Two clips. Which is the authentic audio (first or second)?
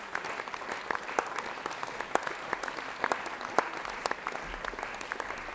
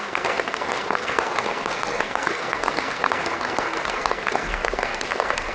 first